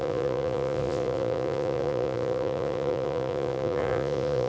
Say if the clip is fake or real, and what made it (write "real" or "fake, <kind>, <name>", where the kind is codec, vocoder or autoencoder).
fake, vocoder, Vocos